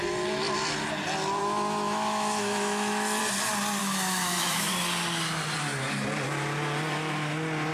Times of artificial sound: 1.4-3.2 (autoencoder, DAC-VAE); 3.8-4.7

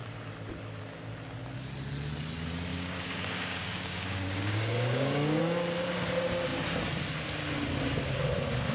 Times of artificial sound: 2.7-5.4 (codec, DAC)